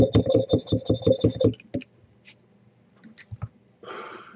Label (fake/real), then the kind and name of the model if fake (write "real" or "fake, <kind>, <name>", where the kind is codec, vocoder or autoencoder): real